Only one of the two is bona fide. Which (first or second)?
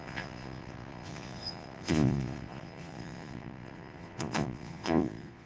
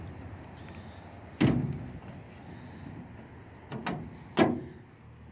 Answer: second